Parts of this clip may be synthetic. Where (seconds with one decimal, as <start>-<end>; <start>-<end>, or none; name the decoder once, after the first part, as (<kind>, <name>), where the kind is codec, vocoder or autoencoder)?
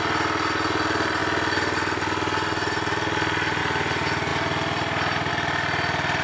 none